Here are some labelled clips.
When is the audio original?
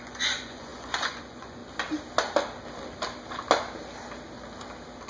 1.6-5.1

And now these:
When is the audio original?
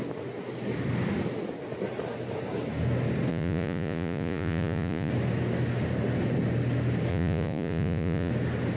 0.0-3.3; 5.1-7.1; 8.3-8.8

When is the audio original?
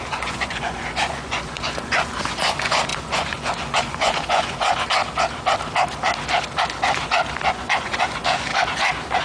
5.0-7.5; 8.5-9.2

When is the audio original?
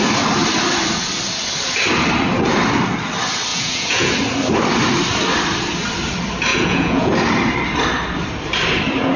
0.0-3.5; 4.1-6.5; 7.1-9.2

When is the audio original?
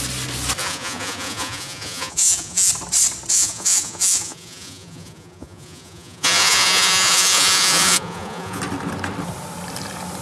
0.0-0.6; 2.7-3.3; 8.6-10.2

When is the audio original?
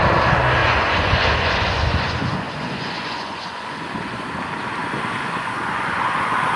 0.0-0.6; 4.3-4.8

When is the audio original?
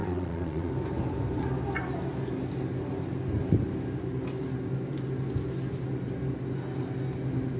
0.7-7.6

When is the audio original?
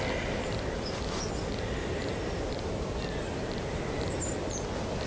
0.0-5.1